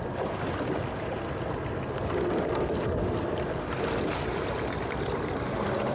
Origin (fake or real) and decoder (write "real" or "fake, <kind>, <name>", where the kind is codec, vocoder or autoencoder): real